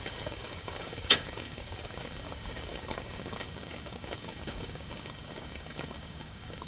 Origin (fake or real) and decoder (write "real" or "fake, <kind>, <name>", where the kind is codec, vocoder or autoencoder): fake, codec, DAC